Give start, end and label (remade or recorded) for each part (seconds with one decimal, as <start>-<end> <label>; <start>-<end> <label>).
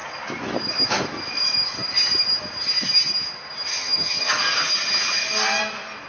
0.0-3.7 recorded; 3.7-4.3 remade; 4.3-6.1 recorded